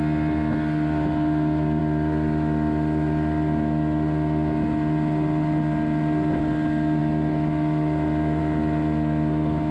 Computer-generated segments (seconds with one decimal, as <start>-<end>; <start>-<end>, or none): none